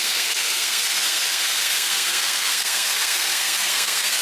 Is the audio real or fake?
fake